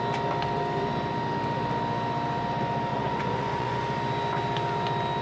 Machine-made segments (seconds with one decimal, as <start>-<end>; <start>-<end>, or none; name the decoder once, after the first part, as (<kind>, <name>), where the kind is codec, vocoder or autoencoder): 2.9-3.8 (vocoder, Vocos)